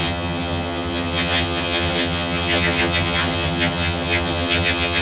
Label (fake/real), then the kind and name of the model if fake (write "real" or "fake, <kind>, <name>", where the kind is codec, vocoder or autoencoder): fake, vocoder, HiFi-GAN